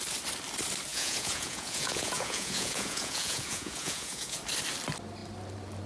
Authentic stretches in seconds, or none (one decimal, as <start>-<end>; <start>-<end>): 0.0-0.9; 4.4-5.9